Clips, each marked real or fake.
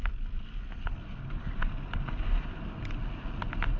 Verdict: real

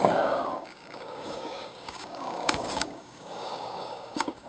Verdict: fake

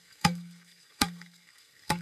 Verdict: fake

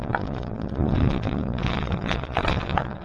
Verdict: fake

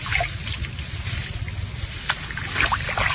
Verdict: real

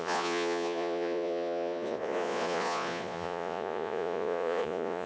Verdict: fake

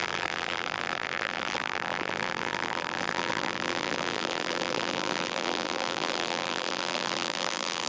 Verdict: fake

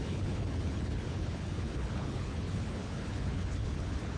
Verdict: fake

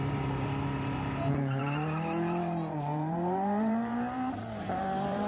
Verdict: fake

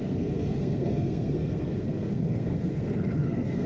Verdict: fake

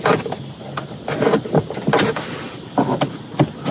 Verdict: real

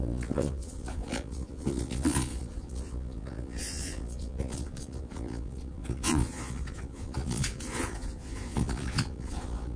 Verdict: fake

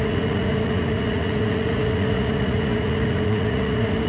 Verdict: fake